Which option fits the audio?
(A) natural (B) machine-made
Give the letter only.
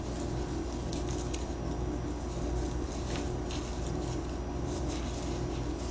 A